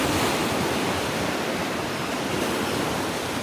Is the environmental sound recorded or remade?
recorded